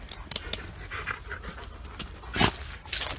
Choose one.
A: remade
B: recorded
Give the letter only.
B